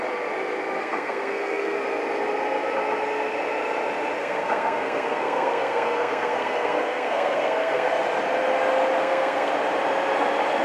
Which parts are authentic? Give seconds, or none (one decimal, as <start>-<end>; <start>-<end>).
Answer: 0.0-0.8; 1.8-4.2; 7.9-9.0; 9.5-10.6